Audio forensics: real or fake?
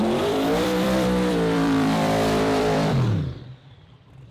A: fake